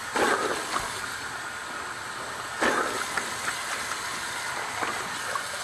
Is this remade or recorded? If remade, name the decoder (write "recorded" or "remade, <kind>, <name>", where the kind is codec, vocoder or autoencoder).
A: recorded